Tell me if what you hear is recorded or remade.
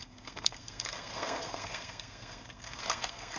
remade